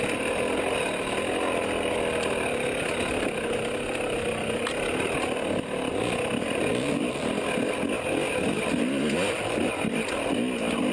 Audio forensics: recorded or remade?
recorded